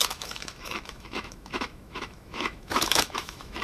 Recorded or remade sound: remade